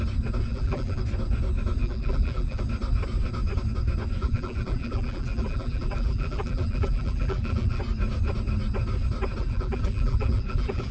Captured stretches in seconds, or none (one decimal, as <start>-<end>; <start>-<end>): 0.0-0.5; 1.0-1.8; 2.6-4.2; 7.8-9.4